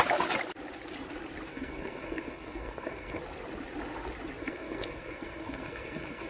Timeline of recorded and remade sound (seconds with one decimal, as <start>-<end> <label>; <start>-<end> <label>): 0.0-1.5 recorded; 1.5-3.2 remade; 3.2-4.4 recorded; 4.4-6.3 remade